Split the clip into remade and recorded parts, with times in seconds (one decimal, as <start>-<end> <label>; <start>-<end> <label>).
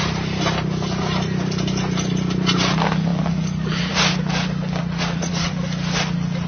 0.0-4.8 recorded; 4.8-5.5 remade; 5.5-6.5 recorded